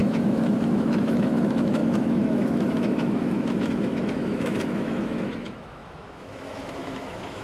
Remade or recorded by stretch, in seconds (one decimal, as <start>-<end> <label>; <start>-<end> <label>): 0.0-7.4 remade